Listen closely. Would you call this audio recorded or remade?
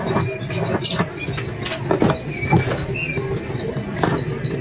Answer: recorded